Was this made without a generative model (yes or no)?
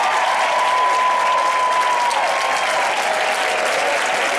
yes